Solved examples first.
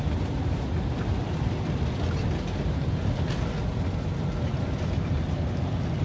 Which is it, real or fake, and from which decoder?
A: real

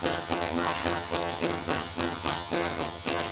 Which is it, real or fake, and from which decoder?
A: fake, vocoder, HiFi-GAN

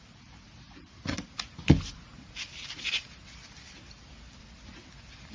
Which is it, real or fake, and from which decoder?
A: real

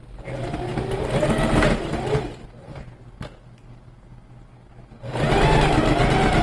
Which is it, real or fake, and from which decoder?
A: real